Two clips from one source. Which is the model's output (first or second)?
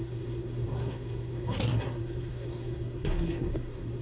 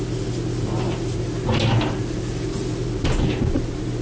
first